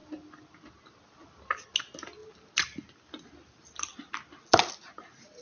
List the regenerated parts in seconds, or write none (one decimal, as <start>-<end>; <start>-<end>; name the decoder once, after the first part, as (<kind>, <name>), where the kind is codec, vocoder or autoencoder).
none